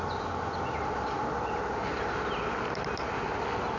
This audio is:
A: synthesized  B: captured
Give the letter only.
B